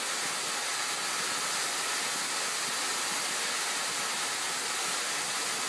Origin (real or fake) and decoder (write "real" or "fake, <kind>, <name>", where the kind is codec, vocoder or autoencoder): real